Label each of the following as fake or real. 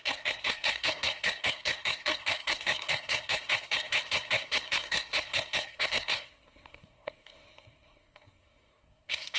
fake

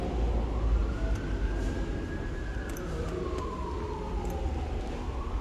real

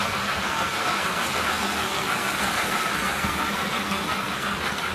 fake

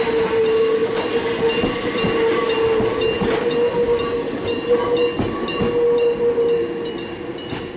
real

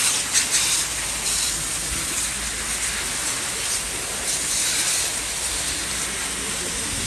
real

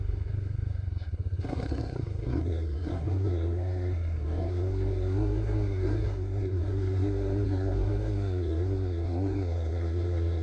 fake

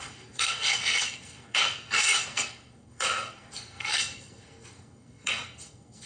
fake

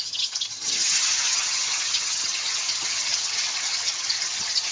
fake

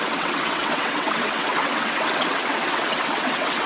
fake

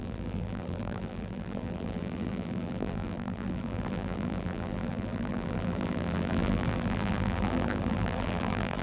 fake